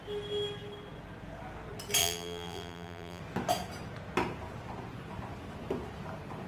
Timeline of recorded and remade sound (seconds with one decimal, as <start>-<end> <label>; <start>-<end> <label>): 0.0-2.0 recorded; 2.0-3.2 remade; 3.2-6.5 recorded